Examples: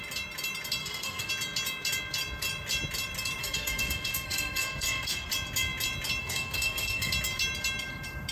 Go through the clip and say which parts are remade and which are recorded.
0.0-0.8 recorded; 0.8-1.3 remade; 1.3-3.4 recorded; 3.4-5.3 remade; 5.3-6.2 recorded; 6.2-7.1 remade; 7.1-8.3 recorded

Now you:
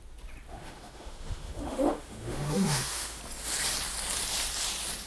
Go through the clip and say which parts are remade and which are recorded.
0.0-0.5 recorded; 0.5-3.2 remade; 3.2-5.1 recorded